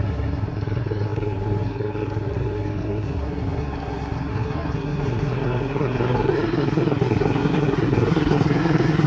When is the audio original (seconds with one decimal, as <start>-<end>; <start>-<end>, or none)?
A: none